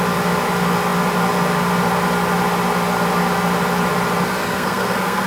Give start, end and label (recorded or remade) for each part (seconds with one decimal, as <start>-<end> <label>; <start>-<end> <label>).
0.0-4.4 recorded; 4.4-5.3 remade